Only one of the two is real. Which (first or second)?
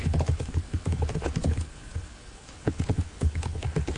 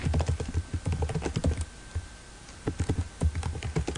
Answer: second